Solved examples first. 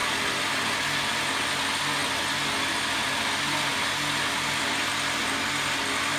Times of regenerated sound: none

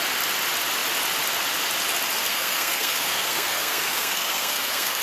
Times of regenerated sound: 2.3-5.0 (codec, SNAC)

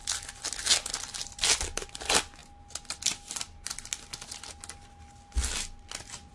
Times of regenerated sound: none

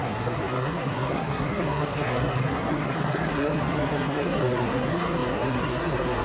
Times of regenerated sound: 0.0-6.2 (codec, SNAC)

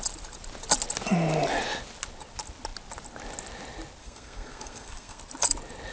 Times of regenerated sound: 4.0-5.2 (codec, SNAC)